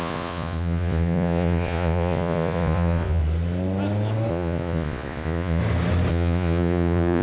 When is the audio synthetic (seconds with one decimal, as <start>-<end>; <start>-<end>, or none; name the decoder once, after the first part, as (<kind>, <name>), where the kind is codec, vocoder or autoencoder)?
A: 0.0-3.2 (vocoder, Vocos); 4.3-5.6; 6.1-7.2